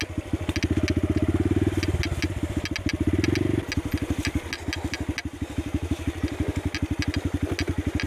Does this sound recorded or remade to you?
recorded